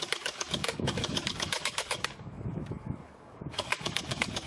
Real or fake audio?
fake